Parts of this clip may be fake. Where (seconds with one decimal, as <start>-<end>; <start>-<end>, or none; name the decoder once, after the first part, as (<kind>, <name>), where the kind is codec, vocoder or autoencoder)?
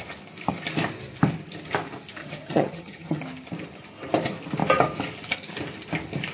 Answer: 2.2-3.2 (vocoder, HiFi-GAN)